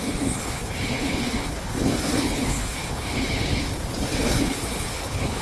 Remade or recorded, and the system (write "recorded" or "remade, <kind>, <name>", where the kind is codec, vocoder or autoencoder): remade, codec, HILCodec